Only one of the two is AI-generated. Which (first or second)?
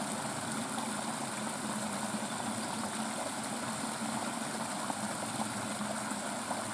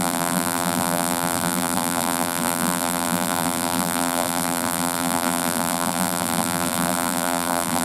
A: second